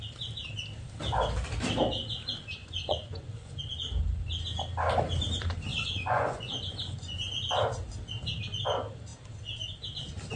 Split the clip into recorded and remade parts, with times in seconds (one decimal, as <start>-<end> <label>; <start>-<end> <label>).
0.0-2.6 recorded; 2.6-3.6 remade; 3.6-5.7 recorded; 5.7-7.3 remade; 7.3-10.4 recorded

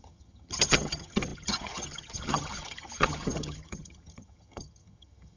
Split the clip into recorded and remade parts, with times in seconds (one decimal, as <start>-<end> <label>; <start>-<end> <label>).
0.0-5.4 remade

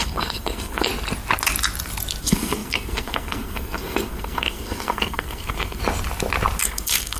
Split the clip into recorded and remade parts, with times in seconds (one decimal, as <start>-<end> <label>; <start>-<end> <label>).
0.0-0.9 remade; 0.9-2.2 recorded; 2.2-5.8 remade; 5.8-6.6 recorded; 6.6-7.2 remade